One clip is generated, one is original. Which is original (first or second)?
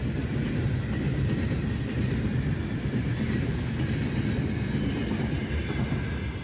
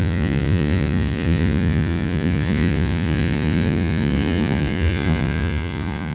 first